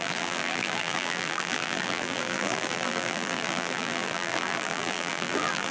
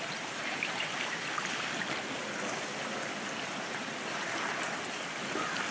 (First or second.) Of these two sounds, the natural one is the second